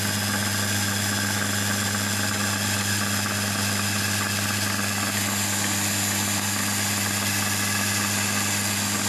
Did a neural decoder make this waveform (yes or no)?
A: no